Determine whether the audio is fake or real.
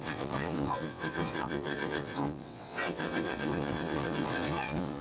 fake